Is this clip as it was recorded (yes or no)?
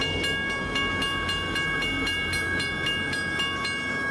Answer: yes